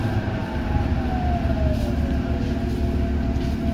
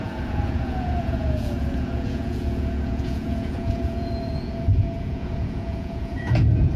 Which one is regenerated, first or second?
second